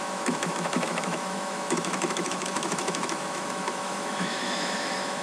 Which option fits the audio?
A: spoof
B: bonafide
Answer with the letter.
A